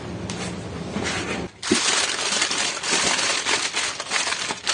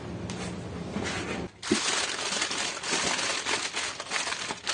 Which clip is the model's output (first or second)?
first